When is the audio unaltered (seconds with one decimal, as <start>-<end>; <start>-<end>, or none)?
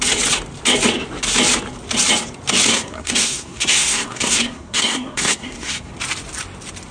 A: 0.0-2.7; 5.9-6.9